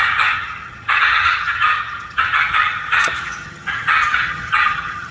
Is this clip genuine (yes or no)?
no